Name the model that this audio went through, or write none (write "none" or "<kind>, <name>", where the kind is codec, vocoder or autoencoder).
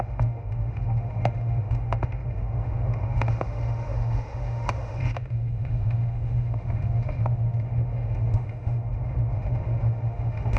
autoencoder, DAC-VAE